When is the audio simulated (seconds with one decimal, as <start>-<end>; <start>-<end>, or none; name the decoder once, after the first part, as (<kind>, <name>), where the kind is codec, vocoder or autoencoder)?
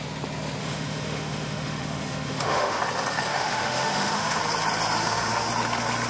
0.6-2.8 (autoencoder, DAC-VAE); 3.3-4.4; 5.0-5.5